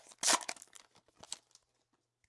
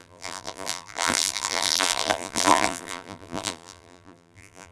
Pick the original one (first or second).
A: first